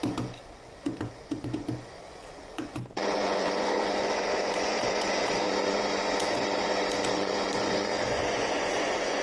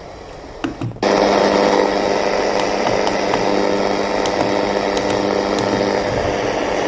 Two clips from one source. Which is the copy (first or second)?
first